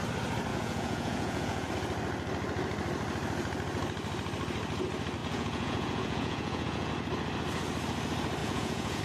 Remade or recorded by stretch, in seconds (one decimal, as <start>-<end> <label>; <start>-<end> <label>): 0.0-0.5 recorded; 0.5-1.7 remade; 1.7-5.2 recorded; 5.2-6.9 remade; 6.9-8.4 recorded; 8.4-9.0 remade